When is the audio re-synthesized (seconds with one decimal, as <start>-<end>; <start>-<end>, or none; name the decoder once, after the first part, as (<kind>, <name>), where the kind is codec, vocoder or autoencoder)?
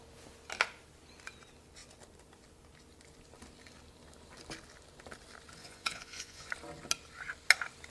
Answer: 5.6-6.5 (vocoder, Vocos)